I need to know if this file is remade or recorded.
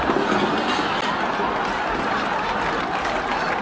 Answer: recorded